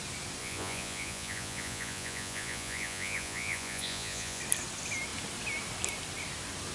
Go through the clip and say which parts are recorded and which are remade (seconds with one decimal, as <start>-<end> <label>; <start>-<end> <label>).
0.0-0.4 recorded; 0.4-4.4 remade; 4.4-6.7 recorded